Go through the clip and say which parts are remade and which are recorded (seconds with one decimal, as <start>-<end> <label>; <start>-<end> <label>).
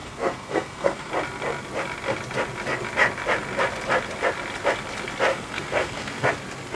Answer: 0.0-1.1 remade; 1.1-5.3 recorded; 5.3-6.3 remade; 6.3-6.7 recorded